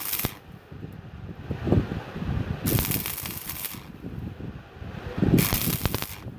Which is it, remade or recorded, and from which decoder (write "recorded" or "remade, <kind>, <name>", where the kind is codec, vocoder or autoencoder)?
recorded